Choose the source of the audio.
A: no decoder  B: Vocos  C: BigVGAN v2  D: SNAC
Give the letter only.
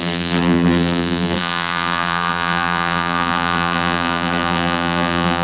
C